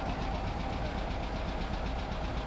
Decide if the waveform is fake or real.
real